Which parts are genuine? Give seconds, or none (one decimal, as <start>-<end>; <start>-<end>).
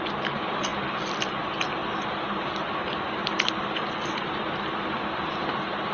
0.0-5.9